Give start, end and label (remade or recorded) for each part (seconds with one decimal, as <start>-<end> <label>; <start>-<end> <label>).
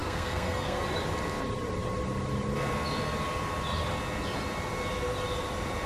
0.0-0.8 remade; 0.8-5.9 recorded